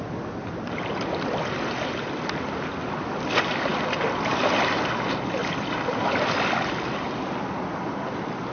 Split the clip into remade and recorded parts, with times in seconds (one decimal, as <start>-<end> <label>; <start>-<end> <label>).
0.0-8.5 recorded